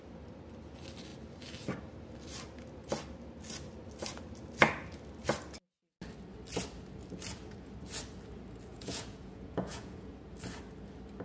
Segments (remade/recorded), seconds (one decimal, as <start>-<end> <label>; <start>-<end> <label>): 0.0-8.7 recorded; 8.7-10.1 remade; 10.1-11.2 recorded